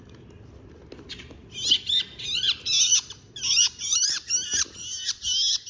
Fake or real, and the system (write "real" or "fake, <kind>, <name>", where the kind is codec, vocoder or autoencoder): real